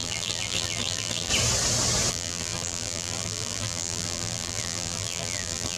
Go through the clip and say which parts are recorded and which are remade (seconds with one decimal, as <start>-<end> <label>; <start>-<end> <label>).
0.0-1.3 remade; 1.3-2.1 recorded; 2.1-5.8 remade